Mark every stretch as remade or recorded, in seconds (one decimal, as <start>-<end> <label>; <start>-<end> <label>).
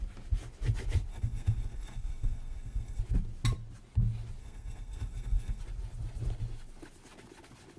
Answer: 0.0-1.1 recorded; 1.1-3.0 remade; 3.0-4.4 recorded; 4.4-5.6 remade; 5.6-7.8 recorded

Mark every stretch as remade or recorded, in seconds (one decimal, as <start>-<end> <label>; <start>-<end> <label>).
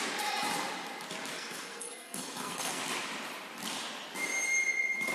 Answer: 0.0-1.3 recorded; 1.3-2.8 remade; 2.8-5.1 recorded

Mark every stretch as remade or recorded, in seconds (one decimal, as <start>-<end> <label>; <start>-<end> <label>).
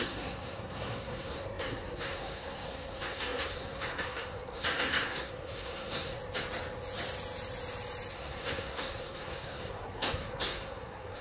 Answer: 0.0-6.2 remade; 6.2-8.1 recorded; 8.1-11.2 remade